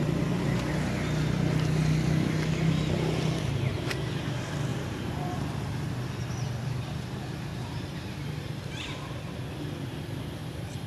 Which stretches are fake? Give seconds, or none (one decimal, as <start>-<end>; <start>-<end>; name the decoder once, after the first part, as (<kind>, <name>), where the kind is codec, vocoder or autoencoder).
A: 4.7-5.9 (vocoder, BigVGAN v2); 7.5-9.5; 10.4-10.9